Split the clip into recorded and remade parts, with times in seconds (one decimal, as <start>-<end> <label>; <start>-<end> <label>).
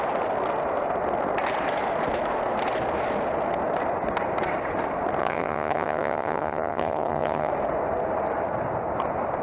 0.0-5.2 recorded; 5.2-7.5 remade; 7.5-9.4 recorded